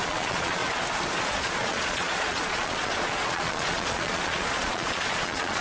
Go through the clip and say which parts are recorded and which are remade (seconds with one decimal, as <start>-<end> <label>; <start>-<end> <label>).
0.0-0.6 remade; 0.6-1.2 recorded; 1.2-5.6 remade